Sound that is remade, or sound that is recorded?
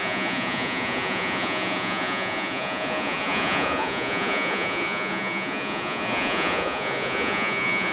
remade